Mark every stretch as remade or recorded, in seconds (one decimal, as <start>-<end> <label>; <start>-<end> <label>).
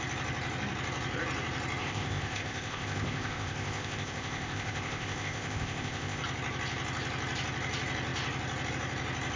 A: 0.0-1.8 recorded; 1.8-6.2 remade; 6.2-9.4 recorded